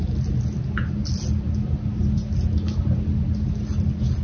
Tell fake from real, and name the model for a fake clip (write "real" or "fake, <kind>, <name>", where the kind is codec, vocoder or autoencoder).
real